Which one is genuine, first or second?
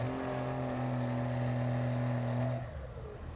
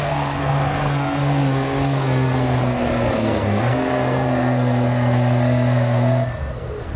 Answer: first